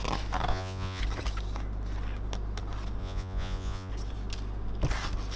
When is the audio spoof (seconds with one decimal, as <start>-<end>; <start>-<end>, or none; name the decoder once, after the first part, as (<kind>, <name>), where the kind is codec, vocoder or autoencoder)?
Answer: 0.5-1.0 (vocoder, Vocos); 3.0-3.9